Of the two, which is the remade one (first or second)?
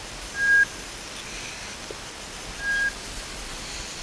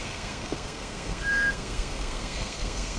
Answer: second